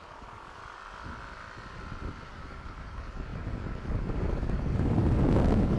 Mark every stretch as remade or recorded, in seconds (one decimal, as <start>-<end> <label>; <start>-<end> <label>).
0.0-0.6 remade; 0.6-2.3 recorded; 2.3-5.8 remade